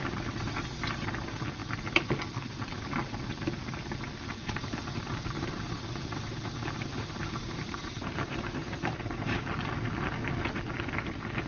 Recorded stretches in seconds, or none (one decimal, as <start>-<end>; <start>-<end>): 0.0-4.4; 9.5-11.5